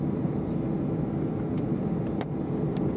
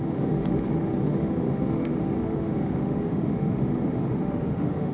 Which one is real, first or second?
first